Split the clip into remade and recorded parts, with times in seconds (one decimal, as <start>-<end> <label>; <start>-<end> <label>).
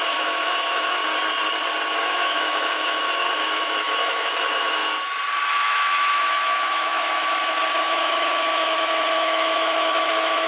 0.0-1.0 remade; 1.0-2.0 recorded; 2.0-4.8 remade; 4.8-5.5 recorded; 5.5-10.5 remade